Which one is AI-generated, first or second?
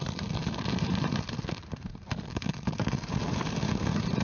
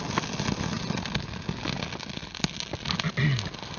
first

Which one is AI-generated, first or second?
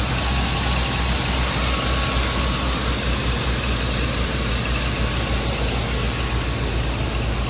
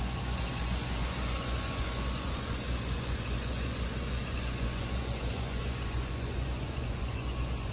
second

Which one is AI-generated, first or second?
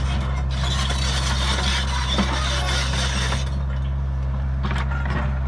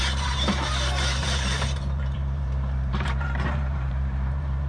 second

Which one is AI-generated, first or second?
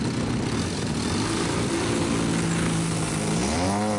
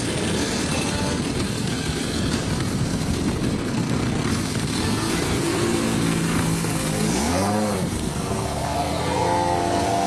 second